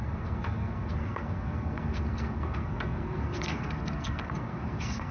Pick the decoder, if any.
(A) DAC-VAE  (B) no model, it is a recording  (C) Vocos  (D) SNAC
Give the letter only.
D